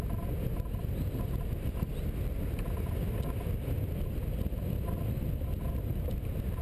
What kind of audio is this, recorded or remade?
recorded